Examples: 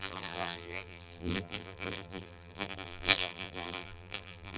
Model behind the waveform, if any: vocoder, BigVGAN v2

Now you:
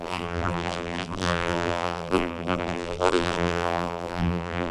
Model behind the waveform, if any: vocoder, BigVGAN v2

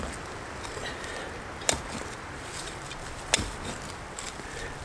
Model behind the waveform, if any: vocoder, BigVGAN v2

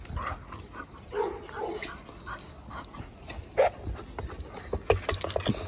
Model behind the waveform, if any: none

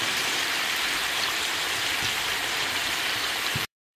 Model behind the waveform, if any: vocoder, BigVGAN v2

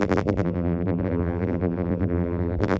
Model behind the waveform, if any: vocoder, BigVGAN v2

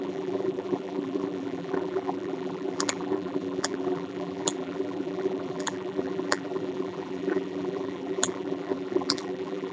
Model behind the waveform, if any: vocoder, BigVGAN v2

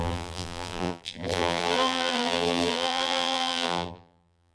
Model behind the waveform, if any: vocoder, BigVGAN v2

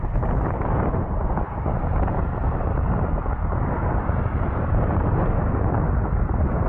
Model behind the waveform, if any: vocoder, BigVGAN v2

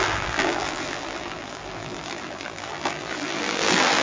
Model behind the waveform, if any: vocoder, BigVGAN v2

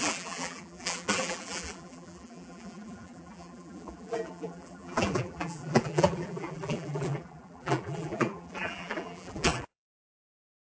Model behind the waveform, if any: vocoder, BigVGAN v2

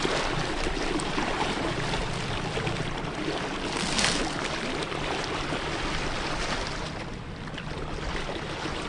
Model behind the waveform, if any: vocoder, BigVGAN v2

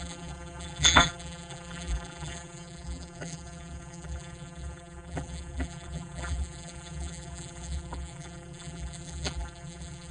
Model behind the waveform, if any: vocoder, BigVGAN v2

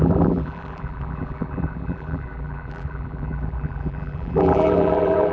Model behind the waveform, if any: vocoder, BigVGAN v2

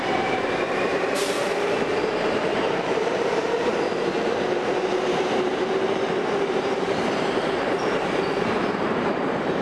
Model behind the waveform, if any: vocoder, BigVGAN v2